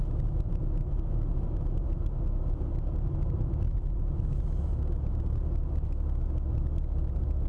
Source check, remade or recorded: recorded